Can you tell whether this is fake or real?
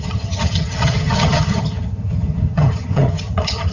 fake